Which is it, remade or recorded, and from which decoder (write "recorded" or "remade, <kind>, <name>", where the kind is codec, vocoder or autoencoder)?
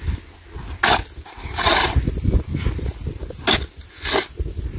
recorded